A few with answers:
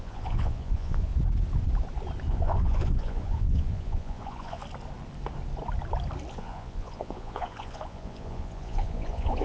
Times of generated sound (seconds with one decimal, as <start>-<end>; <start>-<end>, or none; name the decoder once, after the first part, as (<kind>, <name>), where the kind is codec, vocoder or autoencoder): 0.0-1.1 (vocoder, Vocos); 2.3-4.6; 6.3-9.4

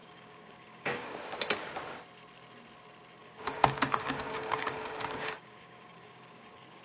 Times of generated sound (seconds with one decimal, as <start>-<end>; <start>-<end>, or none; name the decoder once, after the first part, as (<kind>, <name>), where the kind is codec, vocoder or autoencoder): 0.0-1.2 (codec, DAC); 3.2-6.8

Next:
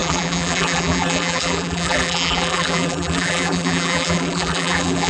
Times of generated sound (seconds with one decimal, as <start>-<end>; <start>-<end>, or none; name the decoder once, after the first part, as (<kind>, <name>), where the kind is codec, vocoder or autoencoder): 0.0-5.1 (vocoder, BigVGAN v2)

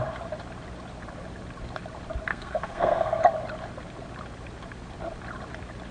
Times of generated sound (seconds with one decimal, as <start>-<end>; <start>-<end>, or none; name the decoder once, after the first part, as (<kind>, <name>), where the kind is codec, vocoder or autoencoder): 2.3-3.2 (codec, SNAC)

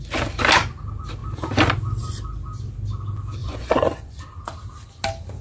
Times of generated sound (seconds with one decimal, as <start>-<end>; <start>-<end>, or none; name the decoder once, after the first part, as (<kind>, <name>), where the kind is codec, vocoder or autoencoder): 3.4-4.2 (vocoder, Vocos)

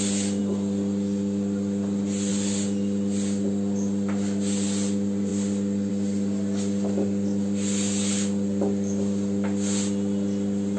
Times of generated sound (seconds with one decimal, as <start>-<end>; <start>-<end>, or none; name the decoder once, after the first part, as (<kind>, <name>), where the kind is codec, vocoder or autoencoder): none